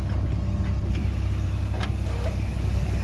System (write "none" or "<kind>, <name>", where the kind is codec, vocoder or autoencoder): none